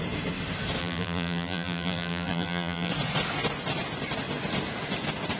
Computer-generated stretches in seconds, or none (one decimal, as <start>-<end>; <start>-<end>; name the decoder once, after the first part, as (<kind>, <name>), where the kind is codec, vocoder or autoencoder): 0.8-2.9 (vocoder, BigVGAN v2)